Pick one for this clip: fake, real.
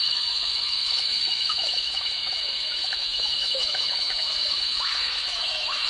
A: fake